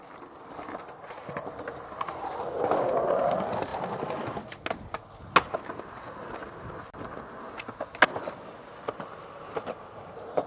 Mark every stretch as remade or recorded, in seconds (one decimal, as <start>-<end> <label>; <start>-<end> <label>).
0.0-10.5 recorded

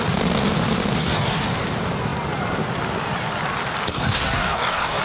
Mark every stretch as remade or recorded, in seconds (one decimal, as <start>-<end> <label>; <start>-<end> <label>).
0.0-1.0 recorded; 1.0-1.5 remade; 1.5-3.9 recorded; 3.9-5.0 remade

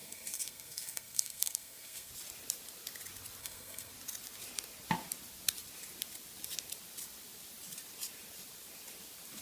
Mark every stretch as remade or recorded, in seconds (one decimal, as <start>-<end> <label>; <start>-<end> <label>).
0.0-2.1 remade; 2.1-3.4 recorded; 3.4-3.9 remade; 3.9-9.4 recorded

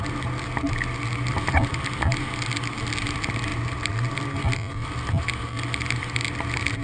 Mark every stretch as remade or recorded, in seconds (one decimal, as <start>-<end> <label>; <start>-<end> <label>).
0.0-6.8 recorded

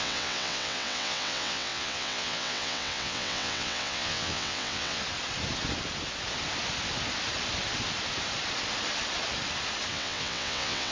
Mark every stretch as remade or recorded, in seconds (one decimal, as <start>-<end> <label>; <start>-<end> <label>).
0.0-5.0 remade; 5.0-9.9 recorded; 9.9-10.9 remade